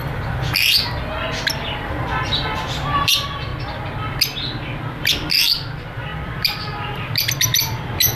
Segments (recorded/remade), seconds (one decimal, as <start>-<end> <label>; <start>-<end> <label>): 0.0-3.5 remade; 3.5-4.8 recorded; 4.8-8.2 remade